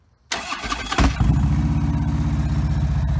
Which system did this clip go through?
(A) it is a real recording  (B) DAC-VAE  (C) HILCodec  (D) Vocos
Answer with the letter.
A